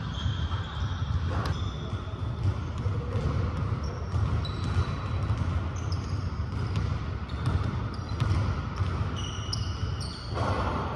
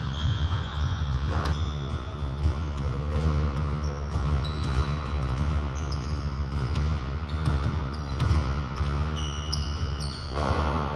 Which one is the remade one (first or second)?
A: second